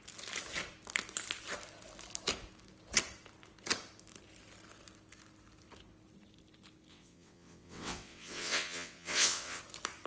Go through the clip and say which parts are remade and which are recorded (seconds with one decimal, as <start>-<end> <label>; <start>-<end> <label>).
0.0-6.9 recorded; 6.9-9.6 remade; 9.6-10.1 recorded